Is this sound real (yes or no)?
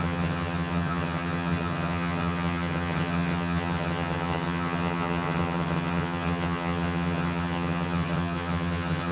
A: no